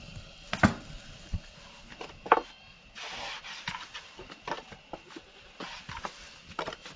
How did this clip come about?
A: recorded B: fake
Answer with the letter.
A